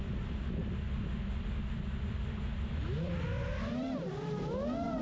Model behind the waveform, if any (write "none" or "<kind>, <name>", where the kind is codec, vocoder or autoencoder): none